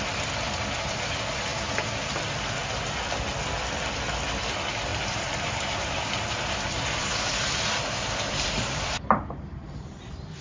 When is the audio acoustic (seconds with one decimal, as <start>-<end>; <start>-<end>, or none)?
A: 0.0-4.9